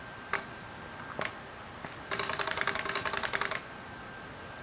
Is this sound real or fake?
real